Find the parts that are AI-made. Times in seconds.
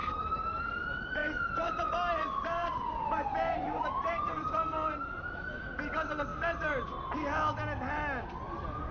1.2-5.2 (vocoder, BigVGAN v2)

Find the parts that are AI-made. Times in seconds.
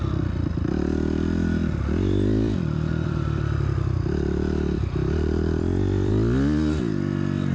1.6-6.1 (vocoder, BigVGAN v2)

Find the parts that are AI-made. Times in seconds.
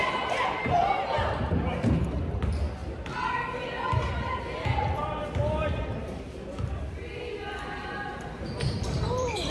2.8-3.4 (vocoder, BigVGAN v2); 6.0-9.5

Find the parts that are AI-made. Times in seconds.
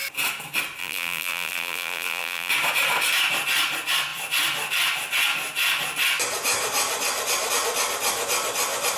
0.8-2.5 (vocoder, BigVGAN v2)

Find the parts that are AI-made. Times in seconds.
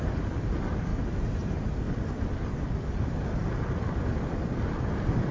0.9-1.5 (vocoder, BigVGAN v2)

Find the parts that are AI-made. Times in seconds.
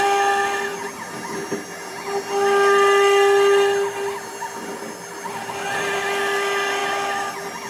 none